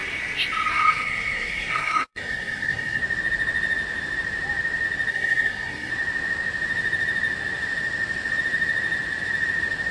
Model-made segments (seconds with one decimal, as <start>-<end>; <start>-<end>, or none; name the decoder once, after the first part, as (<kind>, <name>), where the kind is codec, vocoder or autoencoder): 0.7-3.0 (codec, SNAC); 5.1-5.9